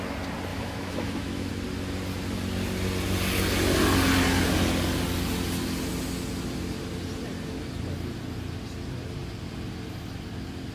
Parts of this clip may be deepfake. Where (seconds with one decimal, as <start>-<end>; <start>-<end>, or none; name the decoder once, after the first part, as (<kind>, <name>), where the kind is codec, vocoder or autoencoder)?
0.5-1.5 (autoencoder, DAC-VAE)